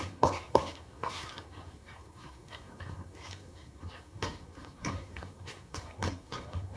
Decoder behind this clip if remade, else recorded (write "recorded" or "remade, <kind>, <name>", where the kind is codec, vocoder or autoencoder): remade, codec, SNAC